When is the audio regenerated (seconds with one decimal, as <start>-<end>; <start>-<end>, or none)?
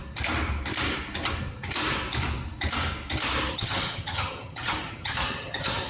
3.5-5.9